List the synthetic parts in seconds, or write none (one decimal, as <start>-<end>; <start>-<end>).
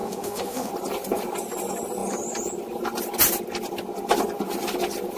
0.0-0.7